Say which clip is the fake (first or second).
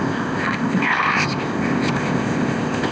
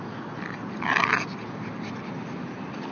first